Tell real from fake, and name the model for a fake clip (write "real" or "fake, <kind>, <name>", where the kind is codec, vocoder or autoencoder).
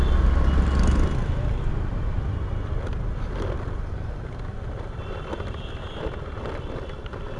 real